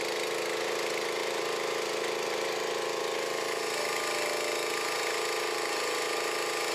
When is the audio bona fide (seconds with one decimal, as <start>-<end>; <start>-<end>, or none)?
0.0-1.2; 3.9-6.7